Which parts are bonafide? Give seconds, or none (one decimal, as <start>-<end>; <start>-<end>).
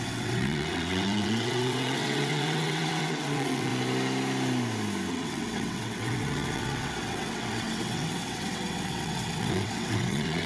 3.7-5.1